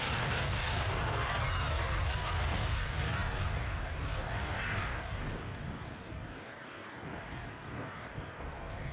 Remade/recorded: remade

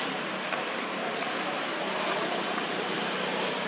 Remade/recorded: recorded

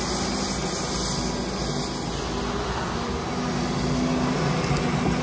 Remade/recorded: recorded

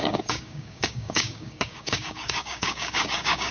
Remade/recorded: remade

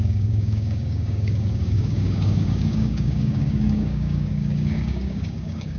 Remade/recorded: remade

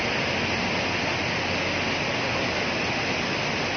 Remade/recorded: recorded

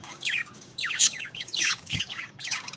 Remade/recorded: remade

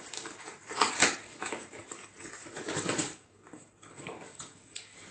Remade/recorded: remade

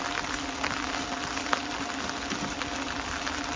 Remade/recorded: recorded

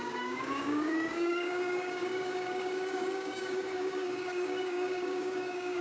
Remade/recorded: remade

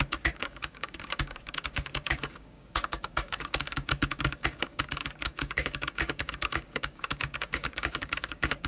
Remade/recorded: remade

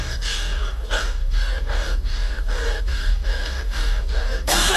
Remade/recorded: remade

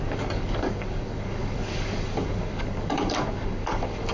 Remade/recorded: remade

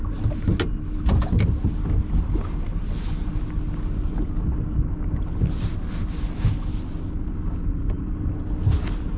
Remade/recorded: recorded